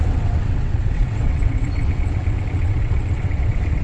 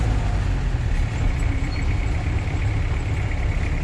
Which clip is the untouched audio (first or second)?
second